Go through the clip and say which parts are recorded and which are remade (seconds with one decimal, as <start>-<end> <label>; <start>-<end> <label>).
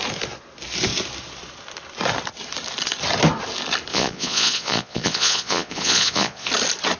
0.0-3.9 recorded; 3.9-6.5 remade; 6.5-7.0 recorded